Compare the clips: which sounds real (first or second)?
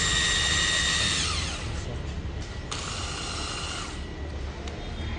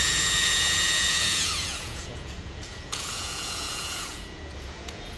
first